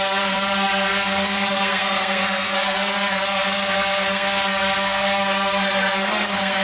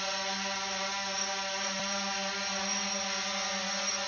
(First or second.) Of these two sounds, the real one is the second